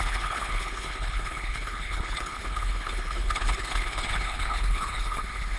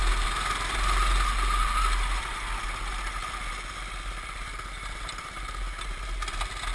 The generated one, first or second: first